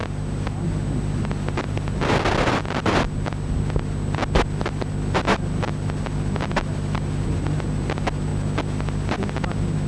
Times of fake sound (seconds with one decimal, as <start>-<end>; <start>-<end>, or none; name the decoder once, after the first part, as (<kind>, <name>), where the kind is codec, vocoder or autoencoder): none